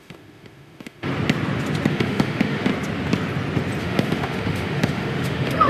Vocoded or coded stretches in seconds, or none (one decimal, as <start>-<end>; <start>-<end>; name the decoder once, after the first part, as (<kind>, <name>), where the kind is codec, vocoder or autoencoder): 0.0-1.1 (autoencoder, DAC-VAE); 1.9-2.7; 3.8-5.7